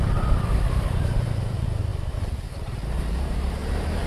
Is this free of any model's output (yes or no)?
no